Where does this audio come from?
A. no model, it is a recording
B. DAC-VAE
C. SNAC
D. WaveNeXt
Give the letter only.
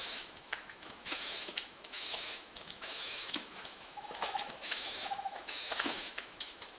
B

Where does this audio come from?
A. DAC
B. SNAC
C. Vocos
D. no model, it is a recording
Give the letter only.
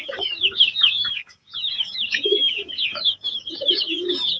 A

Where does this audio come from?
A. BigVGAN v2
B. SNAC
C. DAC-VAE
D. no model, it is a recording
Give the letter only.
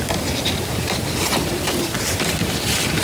D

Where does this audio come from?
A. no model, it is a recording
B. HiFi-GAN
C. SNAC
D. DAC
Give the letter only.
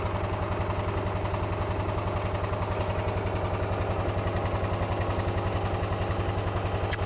A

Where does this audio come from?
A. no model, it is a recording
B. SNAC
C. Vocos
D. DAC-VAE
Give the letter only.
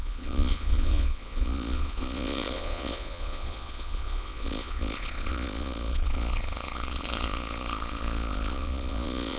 C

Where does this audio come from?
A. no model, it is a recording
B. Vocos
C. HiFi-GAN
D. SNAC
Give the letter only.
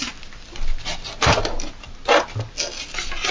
A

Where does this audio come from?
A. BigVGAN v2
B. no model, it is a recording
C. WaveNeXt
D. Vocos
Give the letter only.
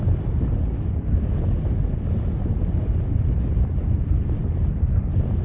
B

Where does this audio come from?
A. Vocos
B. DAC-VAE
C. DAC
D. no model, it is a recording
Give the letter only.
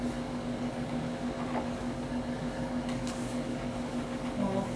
C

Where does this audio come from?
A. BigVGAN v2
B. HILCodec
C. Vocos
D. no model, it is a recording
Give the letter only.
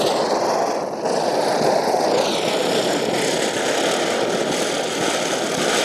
D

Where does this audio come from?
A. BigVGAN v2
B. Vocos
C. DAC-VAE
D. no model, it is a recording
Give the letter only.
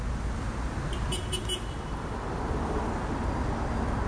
D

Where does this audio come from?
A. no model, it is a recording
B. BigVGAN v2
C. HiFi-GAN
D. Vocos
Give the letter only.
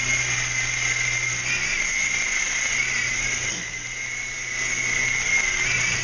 A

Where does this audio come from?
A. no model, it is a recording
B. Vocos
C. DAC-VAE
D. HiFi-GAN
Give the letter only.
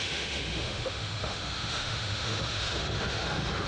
C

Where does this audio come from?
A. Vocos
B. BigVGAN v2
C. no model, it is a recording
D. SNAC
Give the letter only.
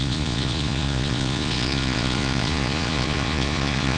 A